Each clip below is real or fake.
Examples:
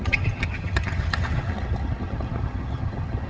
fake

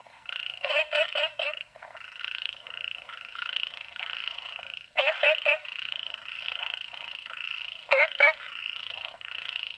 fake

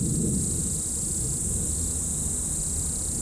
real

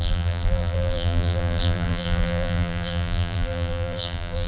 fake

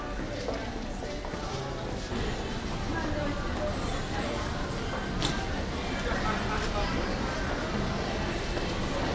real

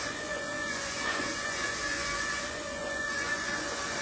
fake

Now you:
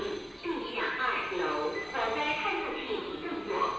real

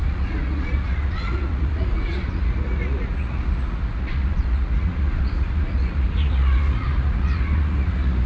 fake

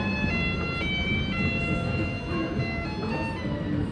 real